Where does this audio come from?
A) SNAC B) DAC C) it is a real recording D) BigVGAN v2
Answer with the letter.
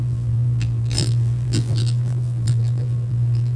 D